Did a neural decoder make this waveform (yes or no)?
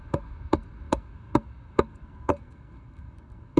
yes